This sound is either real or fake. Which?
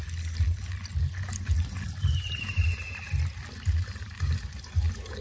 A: real